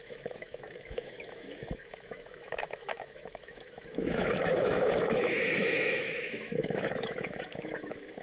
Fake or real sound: fake